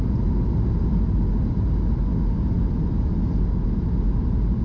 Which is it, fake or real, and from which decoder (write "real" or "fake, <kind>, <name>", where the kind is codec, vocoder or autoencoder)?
real